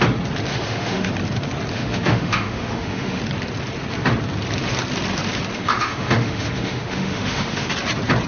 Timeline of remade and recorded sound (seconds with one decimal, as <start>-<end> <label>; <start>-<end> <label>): 0.0-0.5 recorded; 0.5-1.1 remade; 1.1-1.7 recorded; 1.7-3.2 remade; 3.2-5.5 recorded; 5.5-7.7 remade; 7.7-8.3 recorded